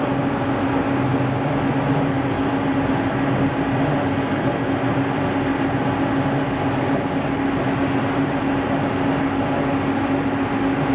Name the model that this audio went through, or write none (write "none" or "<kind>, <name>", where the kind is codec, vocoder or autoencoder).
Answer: none